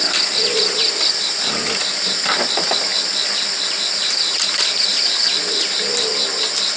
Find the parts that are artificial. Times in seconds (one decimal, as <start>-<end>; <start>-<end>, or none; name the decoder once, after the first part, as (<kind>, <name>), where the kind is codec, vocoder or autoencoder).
4.9-5.5 (vocoder, BigVGAN v2)

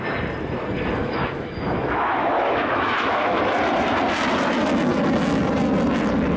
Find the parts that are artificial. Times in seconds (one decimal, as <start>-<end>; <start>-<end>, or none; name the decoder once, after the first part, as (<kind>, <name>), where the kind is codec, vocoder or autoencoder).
1.0-3.4 (autoencoder, DAC-VAE)

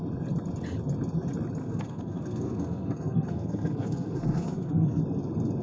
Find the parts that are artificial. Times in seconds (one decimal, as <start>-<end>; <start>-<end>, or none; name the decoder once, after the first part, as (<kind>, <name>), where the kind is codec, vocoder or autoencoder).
1.6-5.0 (codec, SNAC)

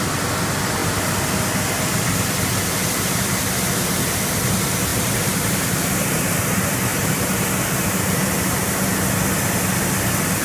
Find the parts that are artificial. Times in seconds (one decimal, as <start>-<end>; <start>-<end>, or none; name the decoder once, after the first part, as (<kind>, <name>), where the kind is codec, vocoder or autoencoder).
4.9-6.3 (vocoder, BigVGAN v2); 6.9-8.8

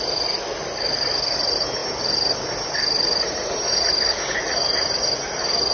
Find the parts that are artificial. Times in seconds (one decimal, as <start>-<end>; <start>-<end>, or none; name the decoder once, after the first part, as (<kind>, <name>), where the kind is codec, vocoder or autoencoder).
none

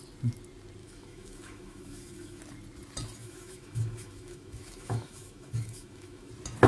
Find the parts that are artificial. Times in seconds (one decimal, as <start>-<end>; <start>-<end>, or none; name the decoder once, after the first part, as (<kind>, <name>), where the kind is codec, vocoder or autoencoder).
0.8-2.4 (autoencoder, DAC-VAE); 3.2-6.3